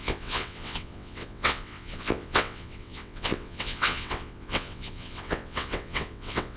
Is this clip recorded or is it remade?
remade